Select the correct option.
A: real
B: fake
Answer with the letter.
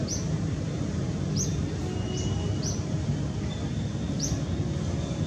A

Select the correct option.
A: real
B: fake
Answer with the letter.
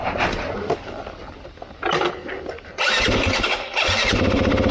A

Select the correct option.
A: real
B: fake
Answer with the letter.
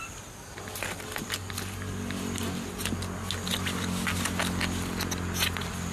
A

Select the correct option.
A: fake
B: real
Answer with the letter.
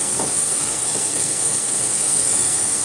A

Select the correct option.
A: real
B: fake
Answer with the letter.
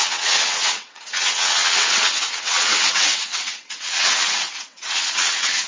B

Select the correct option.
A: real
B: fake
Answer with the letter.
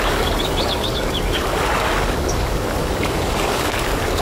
B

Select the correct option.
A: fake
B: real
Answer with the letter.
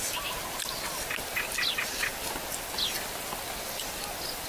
B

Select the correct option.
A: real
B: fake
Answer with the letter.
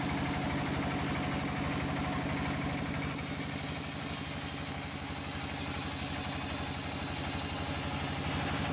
A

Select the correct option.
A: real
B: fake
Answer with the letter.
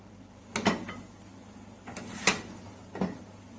A